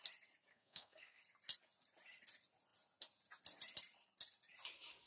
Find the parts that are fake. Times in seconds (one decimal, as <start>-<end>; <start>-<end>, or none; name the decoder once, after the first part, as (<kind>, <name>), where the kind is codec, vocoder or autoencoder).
0.5-1.2 (codec, SNAC)

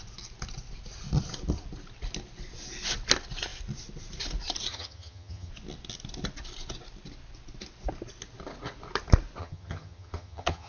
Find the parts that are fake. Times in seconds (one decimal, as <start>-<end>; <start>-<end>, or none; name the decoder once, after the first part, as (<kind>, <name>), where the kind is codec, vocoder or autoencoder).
4.7-5.5 (vocoder, HiFi-GAN); 9.4-10.7

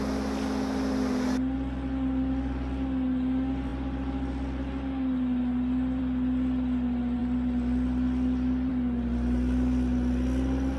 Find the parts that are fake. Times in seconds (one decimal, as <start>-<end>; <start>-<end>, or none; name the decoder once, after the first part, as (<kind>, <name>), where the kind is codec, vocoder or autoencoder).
7.2-8.7 (vocoder, BigVGAN v2)

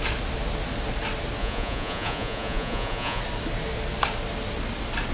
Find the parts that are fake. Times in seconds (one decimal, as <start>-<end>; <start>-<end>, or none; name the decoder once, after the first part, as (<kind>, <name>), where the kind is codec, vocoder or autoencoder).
1.4-3.2 (vocoder, Vocos)

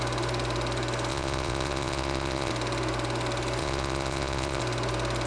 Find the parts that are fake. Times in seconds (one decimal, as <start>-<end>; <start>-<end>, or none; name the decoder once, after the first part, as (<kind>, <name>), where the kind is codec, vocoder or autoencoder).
1.1-2.5 (vocoder, Vocos); 3.6-4.6

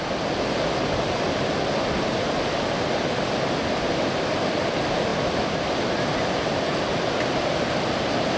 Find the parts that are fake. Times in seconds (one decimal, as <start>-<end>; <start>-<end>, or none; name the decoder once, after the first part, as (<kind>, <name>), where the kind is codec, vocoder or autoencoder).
none

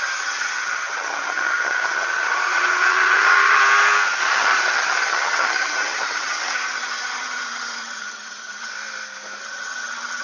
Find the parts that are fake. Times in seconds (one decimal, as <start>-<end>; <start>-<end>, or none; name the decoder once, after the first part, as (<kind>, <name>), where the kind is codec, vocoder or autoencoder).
0.0-3.6 (vocoder, HiFi-GAN); 4.2-8.7; 9.4-10.2